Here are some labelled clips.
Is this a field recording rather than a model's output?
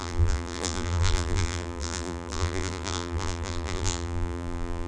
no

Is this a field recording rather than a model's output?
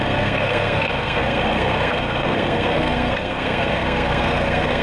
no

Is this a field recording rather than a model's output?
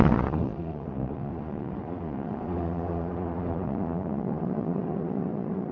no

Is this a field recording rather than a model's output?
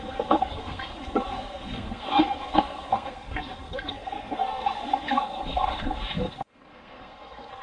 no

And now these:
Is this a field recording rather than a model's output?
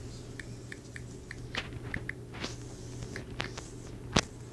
yes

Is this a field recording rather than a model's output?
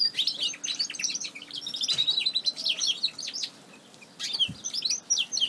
yes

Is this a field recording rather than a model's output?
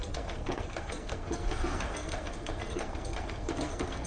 no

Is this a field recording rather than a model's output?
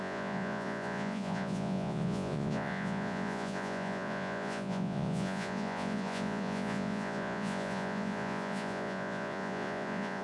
no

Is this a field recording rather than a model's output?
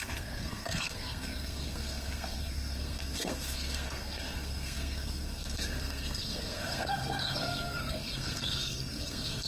no